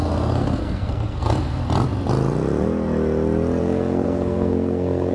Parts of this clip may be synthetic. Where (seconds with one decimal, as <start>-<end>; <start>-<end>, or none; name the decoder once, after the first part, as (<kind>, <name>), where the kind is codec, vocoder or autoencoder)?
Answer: 0.0-1.6 (codec, SNAC); 3.6-5.1